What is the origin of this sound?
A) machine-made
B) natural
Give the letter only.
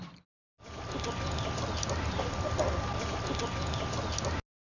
B